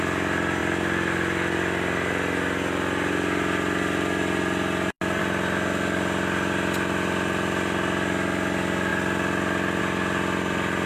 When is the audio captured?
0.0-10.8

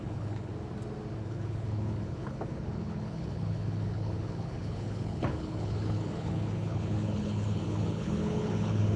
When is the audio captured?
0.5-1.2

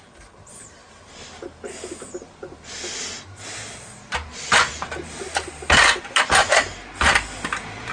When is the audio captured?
0.8-3.2